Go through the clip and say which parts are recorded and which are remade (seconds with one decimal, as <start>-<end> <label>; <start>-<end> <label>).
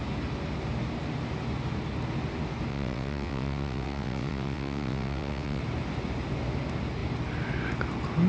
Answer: 0.0-2.7 recorded; 2.7-5.6 remade; 5.6-8.3 recorded